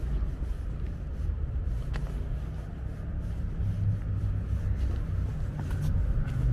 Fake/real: real